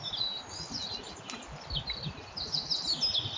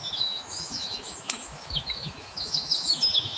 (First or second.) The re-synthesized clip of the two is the second